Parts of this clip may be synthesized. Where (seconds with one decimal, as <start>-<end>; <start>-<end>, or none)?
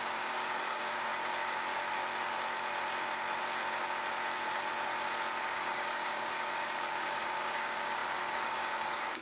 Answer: 0.0-1.1; 5.4-9.2